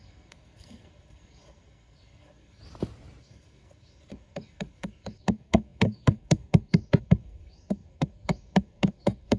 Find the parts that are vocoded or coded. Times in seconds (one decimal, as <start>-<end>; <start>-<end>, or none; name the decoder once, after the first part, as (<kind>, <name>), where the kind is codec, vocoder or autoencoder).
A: 0.0-2.6 (codec, SNAC); 3.2-9.4